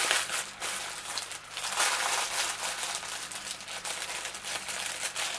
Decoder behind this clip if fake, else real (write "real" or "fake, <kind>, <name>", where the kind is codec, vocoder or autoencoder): real